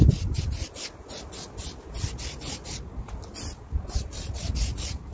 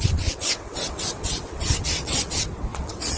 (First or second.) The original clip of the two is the first